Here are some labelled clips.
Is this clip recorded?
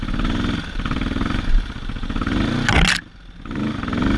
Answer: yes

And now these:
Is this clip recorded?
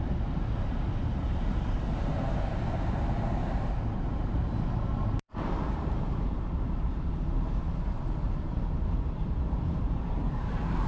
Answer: no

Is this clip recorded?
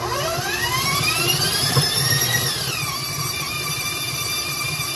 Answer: no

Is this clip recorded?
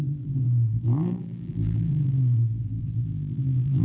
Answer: no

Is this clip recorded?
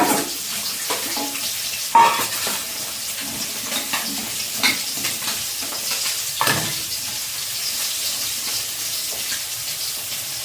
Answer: no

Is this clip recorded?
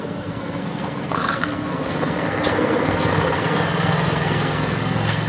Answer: no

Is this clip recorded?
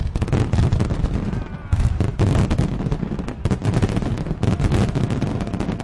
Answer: yes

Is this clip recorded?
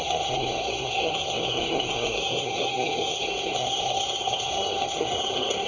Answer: no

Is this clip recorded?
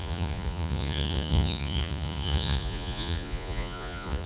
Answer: no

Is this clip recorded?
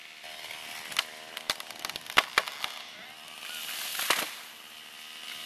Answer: yes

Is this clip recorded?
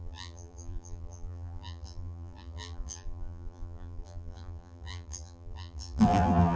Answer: no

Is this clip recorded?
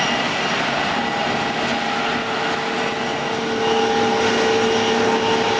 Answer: yes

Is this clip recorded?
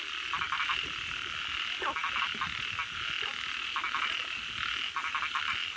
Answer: yes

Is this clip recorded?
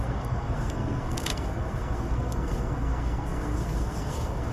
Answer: no